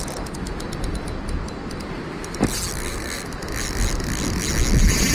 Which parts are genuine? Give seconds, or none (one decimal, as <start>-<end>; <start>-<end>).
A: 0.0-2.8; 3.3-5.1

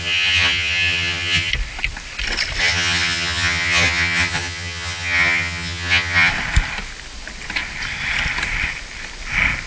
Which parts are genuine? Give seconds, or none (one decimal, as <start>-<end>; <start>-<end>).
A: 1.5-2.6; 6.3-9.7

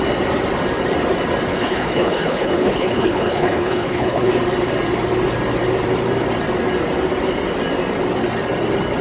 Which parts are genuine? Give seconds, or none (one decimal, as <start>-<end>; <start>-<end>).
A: 0.0-1.5; 4.3-9.0